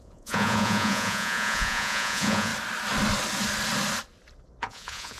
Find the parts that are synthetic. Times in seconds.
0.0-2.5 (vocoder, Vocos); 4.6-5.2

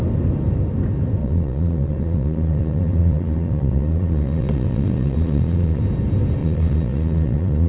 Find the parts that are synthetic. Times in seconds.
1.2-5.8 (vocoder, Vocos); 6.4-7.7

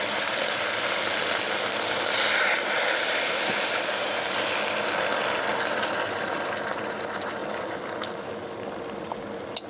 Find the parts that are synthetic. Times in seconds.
none

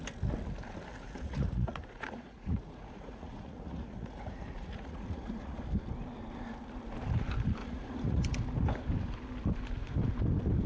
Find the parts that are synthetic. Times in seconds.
0.9-5.6 (vocoder, Vocos); 7.6-8.2

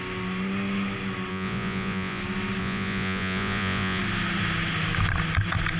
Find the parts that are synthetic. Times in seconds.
1.3-2.2 (vocoder, Vocos); 2.6-4.0